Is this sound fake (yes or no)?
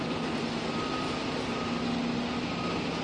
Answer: no